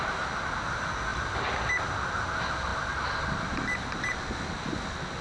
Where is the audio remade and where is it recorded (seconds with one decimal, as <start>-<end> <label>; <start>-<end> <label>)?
0.0-1.1 recorded; 1.1-2.2 remade; 2.2-5.2 recorded